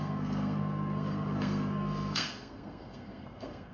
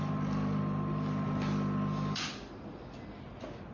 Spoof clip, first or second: first